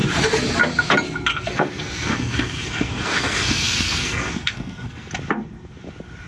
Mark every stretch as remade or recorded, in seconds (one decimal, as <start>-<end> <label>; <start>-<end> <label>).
0.0-1.3 recorded; 1.3-5.1 remade; 5.1-6.3 recorded